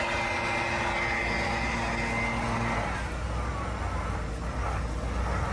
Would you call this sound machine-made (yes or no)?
no